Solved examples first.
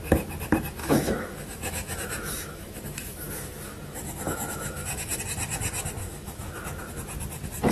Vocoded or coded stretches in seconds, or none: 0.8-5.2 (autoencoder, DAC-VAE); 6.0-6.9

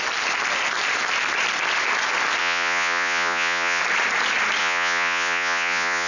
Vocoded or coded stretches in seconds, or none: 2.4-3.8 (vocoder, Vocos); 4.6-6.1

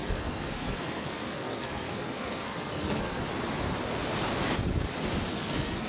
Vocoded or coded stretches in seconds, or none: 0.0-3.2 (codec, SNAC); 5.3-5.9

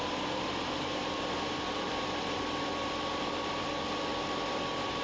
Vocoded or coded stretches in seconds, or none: 0.0-5.0 (vocoder, BigVGAN v2)